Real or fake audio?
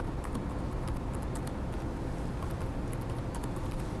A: real